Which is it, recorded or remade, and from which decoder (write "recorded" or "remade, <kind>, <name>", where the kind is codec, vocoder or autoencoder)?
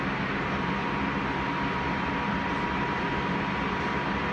recorded